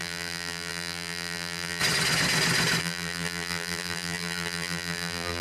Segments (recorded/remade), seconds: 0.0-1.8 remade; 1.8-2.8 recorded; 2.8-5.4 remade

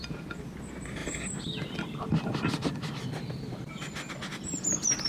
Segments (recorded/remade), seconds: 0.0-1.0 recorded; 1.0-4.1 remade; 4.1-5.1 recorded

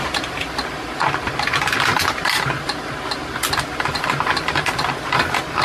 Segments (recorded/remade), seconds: 0.0-5.6 recorded

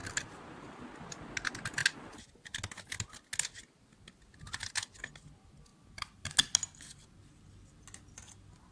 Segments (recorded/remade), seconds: 0.0-0.8 remade; 0.8-5.7 recorded; 5.7-6.3 remade; 6.3-8.7 recorded

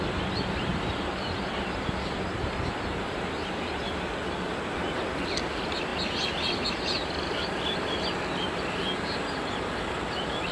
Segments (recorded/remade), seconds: 0.0-10.5 remade

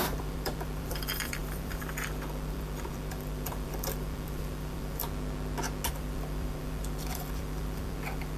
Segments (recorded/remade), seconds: 0.0-5.0 remade; 5.0-5.9 recorded; 5.9-8.4 remade

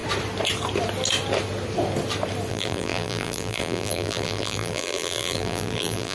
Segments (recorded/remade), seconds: 0.0-2.5 recorded; 2.5-6.1 remade

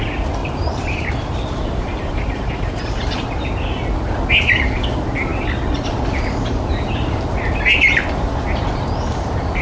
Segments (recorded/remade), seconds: 0.0-0.4 recorded; 0.4-2.8 remade; 2.8-9.6 recorded